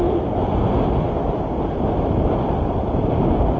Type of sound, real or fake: real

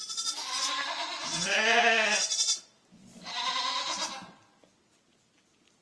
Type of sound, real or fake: real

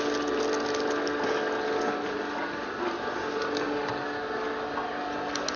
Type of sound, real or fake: real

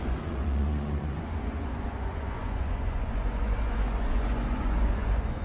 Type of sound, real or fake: fake